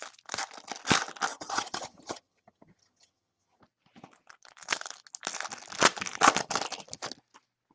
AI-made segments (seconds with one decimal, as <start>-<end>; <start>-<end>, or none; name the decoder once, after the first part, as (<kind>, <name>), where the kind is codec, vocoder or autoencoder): 1.3-3.6 (vocoder, HiFi-GAN)